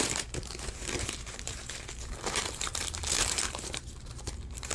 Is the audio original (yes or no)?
no